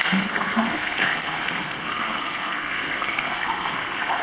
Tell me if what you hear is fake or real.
fake